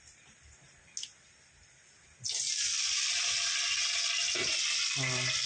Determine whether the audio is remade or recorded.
recorded